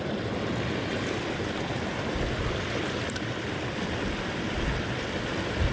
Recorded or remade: recorded